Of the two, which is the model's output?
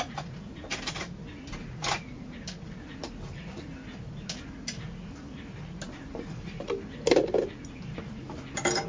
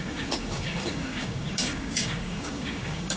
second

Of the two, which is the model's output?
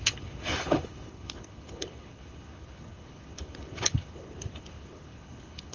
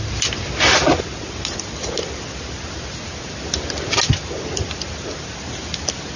first